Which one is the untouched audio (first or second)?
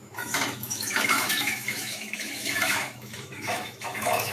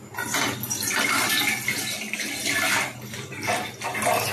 second